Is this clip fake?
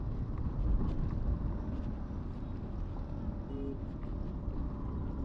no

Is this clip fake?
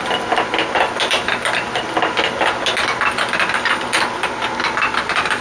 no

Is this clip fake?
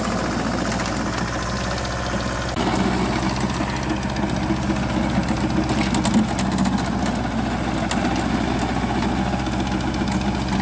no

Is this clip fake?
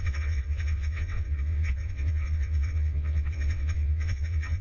yes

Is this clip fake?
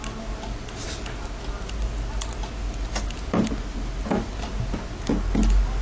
no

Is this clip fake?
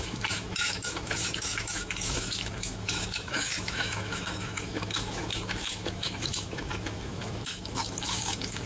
yes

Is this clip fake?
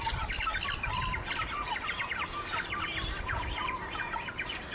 no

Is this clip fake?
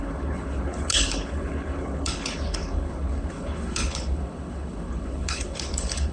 yes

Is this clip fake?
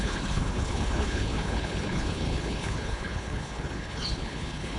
yes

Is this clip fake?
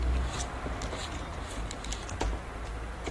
no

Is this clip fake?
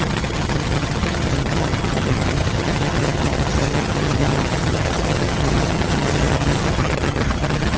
yes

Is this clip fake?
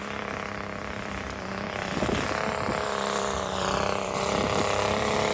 yes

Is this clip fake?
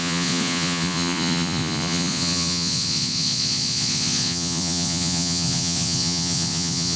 yes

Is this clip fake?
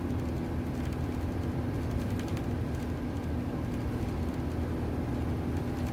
no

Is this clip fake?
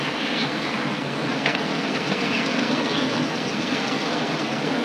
yes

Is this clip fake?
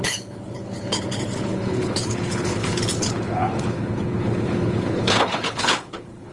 yes